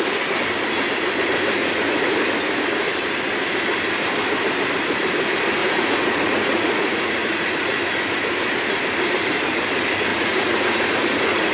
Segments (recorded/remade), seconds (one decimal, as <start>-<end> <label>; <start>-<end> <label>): 0.0-1.6 recorded; 1.6-2.1 remade; 2.1-5.6 recorded; 5.6-7.8 remade; 7.8-10.1 recorded; 10.1-11.5 remade